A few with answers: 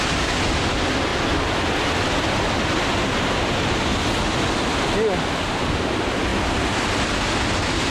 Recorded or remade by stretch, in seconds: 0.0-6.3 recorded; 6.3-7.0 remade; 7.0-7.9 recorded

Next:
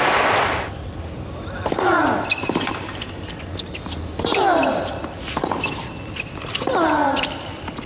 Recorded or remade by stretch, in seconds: 0.0-7.0 recorded; 7.0-7.9 remade

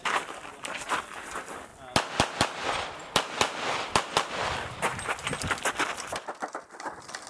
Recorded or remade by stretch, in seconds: 0.0-1.7 remade; 1.7-4.3 recorded; 4.3-4.9 remade; 4.9-7.3 recorded

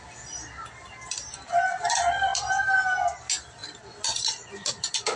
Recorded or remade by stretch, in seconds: 0.0-5.2 recorded

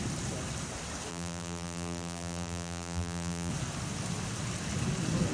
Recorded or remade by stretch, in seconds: 0.0-1.1 recorded; 1.1-3.5 remade; 3.5-5.3 recorded